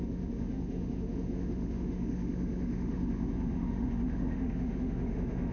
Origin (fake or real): fake